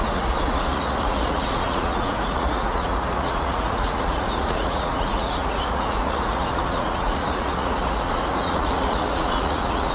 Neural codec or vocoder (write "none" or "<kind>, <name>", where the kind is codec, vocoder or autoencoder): vocoder, Vocos